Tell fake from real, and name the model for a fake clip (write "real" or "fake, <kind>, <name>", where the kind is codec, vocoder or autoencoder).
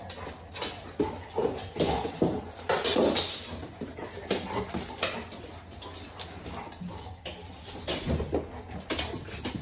real